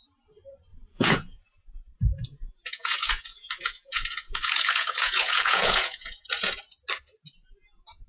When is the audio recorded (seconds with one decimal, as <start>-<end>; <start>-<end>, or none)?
0.0-0.7; 1.4-2.3; 6.6-8.1